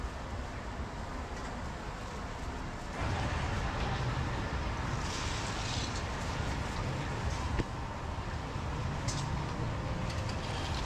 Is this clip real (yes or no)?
yes